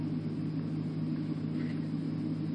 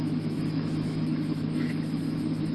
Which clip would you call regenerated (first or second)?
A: second